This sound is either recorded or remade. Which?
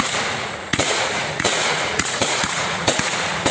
remade